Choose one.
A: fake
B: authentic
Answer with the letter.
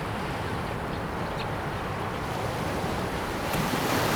A